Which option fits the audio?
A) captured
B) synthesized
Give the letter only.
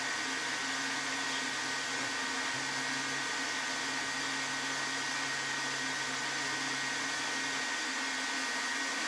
A